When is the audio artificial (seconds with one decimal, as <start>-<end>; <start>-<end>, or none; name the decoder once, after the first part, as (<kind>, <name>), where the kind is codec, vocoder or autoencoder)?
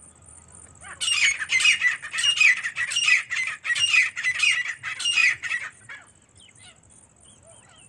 2.7-3.8 (vocoder, BigVGAN v2); 5.2-5.9